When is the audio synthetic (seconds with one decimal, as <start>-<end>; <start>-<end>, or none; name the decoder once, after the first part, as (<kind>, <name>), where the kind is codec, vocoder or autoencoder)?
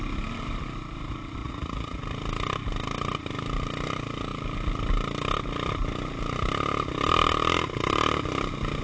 1.4-2.0 (vocoder, Vocos)